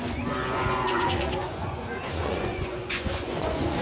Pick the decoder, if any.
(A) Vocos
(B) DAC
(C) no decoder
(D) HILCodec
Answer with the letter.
A